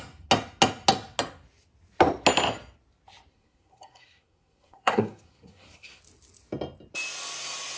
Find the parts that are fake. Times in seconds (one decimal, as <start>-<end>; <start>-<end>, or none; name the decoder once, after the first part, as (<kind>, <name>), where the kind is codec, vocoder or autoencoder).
3.3-6.0 (codec, SNAC)